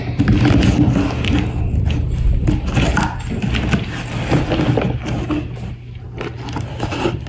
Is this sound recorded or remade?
recorded